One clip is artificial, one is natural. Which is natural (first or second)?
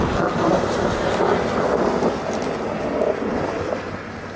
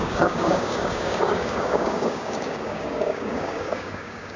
first